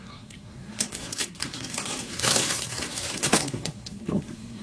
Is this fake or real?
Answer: fake